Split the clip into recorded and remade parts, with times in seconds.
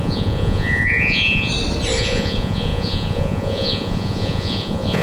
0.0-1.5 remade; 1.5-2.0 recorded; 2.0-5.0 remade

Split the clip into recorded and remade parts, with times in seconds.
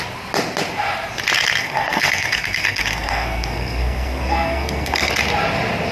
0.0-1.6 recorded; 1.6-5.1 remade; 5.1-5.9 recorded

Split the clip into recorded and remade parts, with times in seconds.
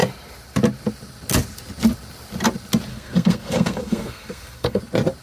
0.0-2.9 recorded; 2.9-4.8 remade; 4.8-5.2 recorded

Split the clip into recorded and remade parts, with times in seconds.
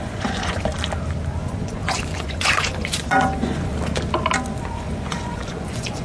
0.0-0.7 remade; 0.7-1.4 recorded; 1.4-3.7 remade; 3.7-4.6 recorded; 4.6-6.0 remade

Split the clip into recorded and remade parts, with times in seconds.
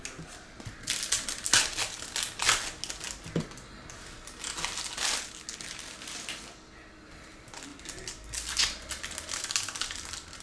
0.0-10.4 recorded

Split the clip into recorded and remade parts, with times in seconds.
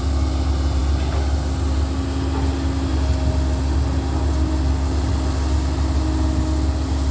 0.0-7.1 recorded